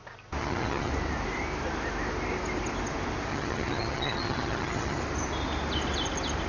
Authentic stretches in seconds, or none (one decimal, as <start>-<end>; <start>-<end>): 0.0-0.4; 0.9-3.3; 5.0-6.5